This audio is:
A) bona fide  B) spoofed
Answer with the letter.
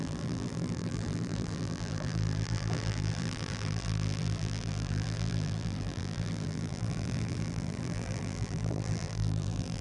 B